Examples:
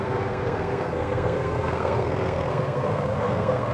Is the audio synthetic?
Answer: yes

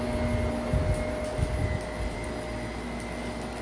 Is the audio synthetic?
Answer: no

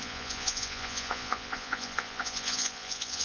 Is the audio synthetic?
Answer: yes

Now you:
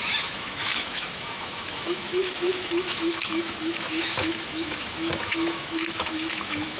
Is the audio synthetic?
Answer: yes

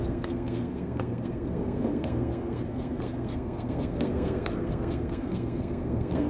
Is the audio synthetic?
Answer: yes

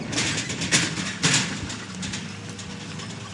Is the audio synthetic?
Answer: no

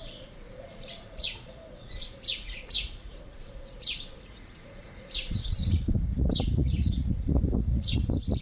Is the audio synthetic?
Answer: yes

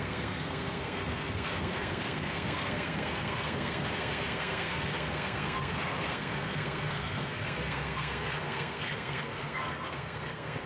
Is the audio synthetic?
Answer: yes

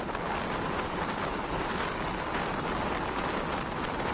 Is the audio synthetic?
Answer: no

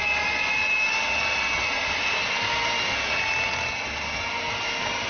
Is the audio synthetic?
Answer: no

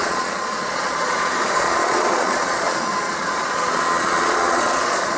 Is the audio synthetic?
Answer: yes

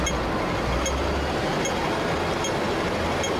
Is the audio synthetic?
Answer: no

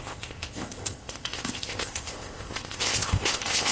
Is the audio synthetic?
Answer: yes